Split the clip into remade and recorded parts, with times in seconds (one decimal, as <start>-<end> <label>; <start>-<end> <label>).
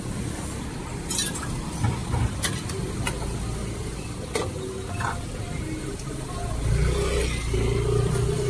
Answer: 0.0-8.5 recorded